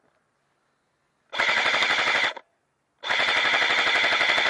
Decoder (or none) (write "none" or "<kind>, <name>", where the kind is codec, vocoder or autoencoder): none